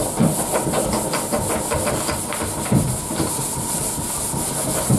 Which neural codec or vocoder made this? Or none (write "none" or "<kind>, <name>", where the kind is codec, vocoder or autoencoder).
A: none